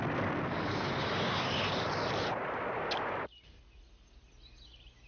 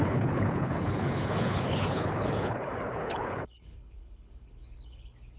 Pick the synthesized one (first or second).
second